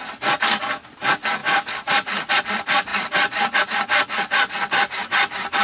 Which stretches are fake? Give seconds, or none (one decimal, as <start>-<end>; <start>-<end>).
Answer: none